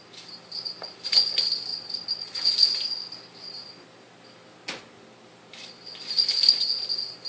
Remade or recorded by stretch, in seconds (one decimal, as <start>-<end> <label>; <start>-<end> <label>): 0.0-7.3 recorded